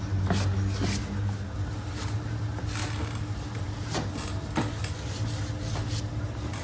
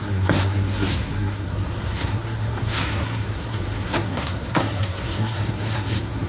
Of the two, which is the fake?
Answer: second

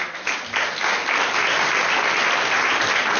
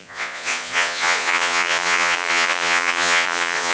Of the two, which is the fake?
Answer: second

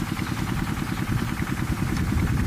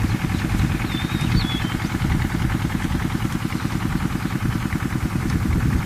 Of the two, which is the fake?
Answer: first